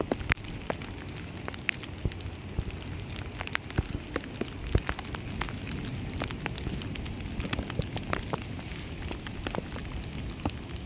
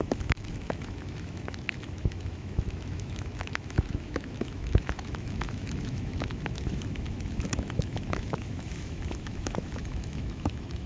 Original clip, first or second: first